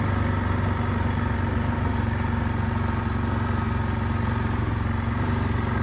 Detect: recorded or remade recorded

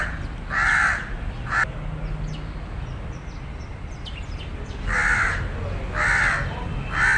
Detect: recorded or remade recorded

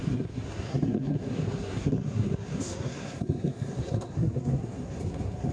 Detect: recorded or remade remade